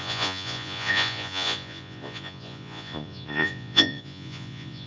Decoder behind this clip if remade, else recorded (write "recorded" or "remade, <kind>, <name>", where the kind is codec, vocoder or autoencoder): remade, vocoder, Vocos